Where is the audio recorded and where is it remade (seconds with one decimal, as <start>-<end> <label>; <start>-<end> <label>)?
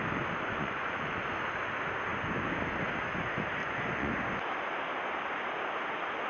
0.0-0.5 recorded; 0.5-1.1 remade; 1.1-3.6 recorded; 3.6-4.1 remade; 4.1-6.3 recorded